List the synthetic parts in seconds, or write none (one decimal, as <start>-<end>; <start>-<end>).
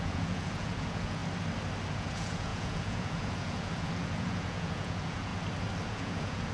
0.0-1.2; 1.9-5.3; 5.9-6.5